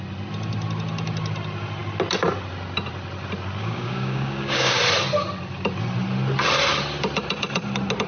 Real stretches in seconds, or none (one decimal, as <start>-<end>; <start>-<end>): 0.0-3.6; 4.8-8.1